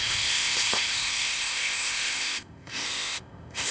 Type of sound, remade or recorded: remade